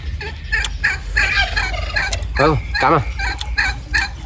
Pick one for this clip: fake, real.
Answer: real